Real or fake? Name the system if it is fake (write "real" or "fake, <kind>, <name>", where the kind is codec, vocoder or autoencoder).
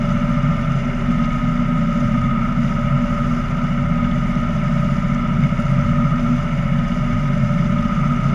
real